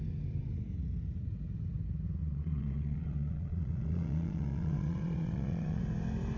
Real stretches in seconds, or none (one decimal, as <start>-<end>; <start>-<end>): 0.0-2.2; 5.8-6.4